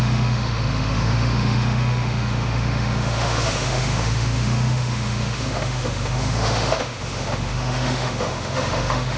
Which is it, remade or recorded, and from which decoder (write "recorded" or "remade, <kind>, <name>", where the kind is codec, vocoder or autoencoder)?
remade, autoencoder, DAC-VAE